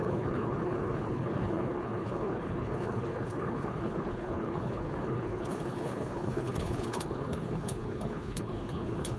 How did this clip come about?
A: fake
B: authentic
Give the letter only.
A